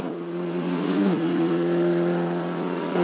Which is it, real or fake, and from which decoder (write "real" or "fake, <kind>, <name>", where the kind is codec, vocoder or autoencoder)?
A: fake, vocoder, Vocos